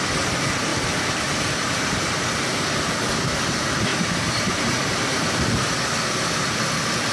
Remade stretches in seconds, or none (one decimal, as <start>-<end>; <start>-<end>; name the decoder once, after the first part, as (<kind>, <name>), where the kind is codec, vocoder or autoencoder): 0.7-2.3 (vocoder, BigVGAN v2); 3.9-5.7